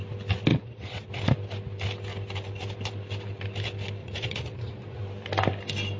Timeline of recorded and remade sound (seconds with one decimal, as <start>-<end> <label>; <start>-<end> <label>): 0.0-0.5 recorded; 0.5-1.1 remade; 1.1-4.0 recorded; 4.0-5.0 remade; 5.0-6.0 recorded